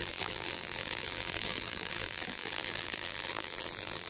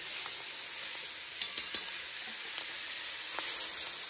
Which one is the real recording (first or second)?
second